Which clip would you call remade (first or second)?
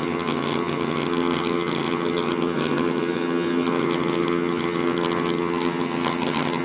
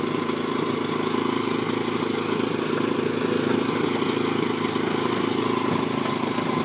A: first